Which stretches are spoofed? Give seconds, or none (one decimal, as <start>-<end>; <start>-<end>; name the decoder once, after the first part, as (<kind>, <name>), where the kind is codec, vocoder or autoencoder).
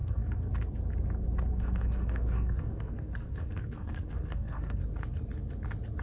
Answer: 0.0-0.5 (codec, SNAC); 1.5-4.8